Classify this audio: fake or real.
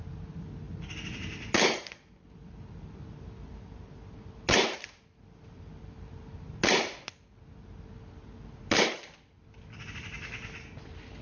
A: real